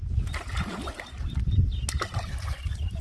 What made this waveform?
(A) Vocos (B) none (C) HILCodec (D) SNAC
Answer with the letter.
B